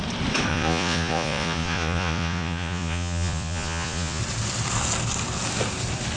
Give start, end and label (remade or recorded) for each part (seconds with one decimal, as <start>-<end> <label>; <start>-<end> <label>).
0.0-0.5 recorded; 0.5-4.2 remade; 4.2-6.2 recorded